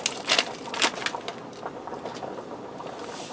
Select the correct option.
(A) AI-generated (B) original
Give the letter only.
B